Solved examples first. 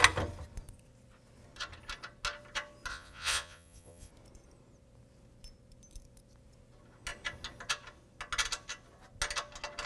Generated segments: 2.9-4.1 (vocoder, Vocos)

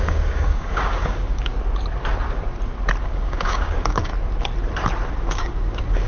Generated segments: 0.0-1.5 (codec, DAC); 3.0-4.1; 5.2-6.1

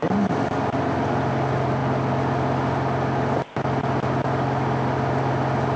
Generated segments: none

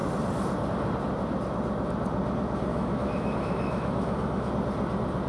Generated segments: 2.7-4.5 (autoencoder, DAC-VAE)